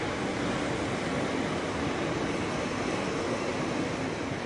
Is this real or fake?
real